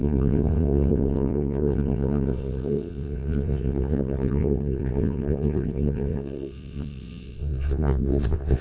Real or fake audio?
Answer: fake